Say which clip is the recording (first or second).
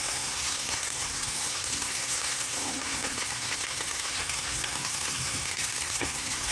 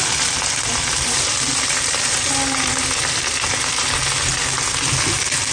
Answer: second